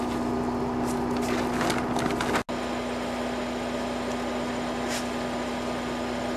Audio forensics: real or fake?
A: real